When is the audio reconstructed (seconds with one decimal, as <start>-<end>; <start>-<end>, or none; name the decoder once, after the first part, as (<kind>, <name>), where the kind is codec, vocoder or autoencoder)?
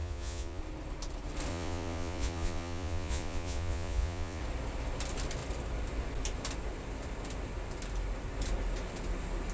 0.0-0.6 (vocoder, Vocos); 1.5-4.4